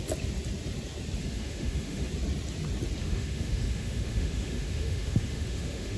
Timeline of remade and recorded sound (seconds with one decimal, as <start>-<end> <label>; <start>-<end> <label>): 0.0-1.2 recorded; 1.2-2.1 remade; 2.1-3.0 recorded; 3.0-6.0 remade